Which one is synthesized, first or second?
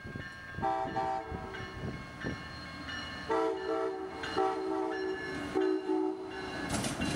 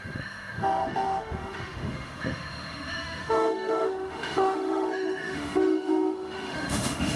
second